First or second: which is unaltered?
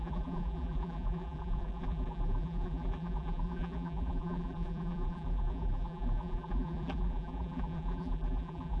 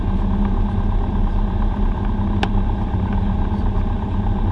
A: second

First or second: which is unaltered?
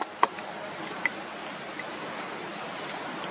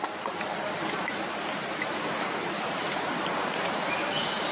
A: first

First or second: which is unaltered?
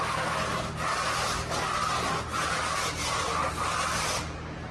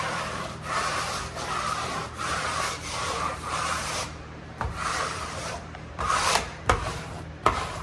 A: first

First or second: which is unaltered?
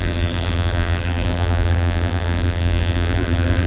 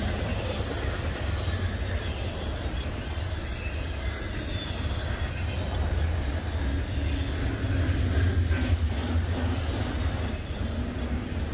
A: second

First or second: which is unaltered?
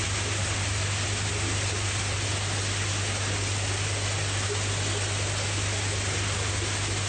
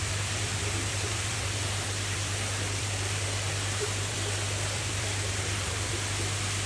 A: first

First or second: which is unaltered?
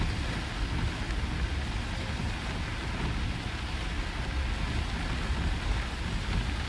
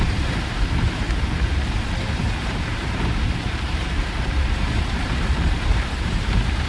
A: first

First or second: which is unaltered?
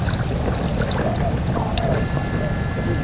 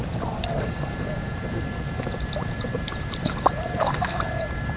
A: first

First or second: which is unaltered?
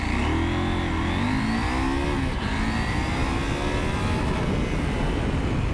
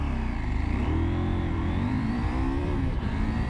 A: first